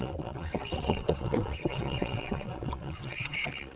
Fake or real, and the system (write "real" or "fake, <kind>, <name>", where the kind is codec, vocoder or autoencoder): fake, vocoder, WaveNeXt